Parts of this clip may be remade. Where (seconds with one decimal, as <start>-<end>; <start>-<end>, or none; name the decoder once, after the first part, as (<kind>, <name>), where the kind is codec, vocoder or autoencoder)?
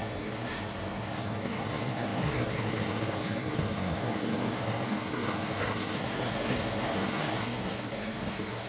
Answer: 0.0-8.7 (codec, SNAC)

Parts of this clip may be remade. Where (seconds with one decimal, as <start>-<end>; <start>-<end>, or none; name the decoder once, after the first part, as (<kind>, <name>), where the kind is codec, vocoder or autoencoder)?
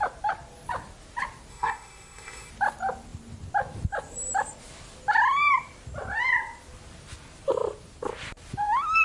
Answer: 1.5-2.5 (codec, SNAC)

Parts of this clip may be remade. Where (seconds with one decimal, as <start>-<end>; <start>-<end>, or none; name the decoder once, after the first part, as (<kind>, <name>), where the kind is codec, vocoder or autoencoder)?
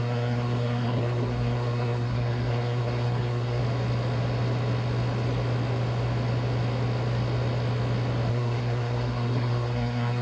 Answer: 0.0-3.6 (codec, SNAC); 8.3-10.2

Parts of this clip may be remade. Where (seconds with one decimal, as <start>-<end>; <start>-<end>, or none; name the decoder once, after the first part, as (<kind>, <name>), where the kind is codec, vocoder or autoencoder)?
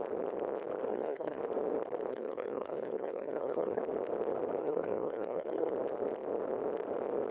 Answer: 0.9-1.4 (codec, SNAC); 2.1-3.8; 4.6-5.7